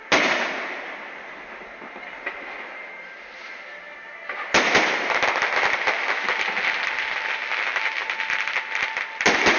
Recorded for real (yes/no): yes